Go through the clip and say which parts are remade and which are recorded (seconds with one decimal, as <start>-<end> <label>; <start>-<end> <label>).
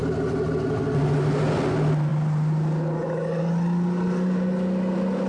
0.0-5.3 recorded